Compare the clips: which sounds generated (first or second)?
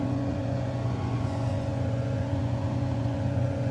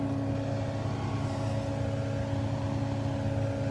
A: first